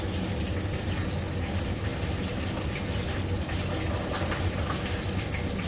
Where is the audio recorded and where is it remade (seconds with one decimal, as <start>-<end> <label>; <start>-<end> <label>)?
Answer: 0.0-5.7 recorded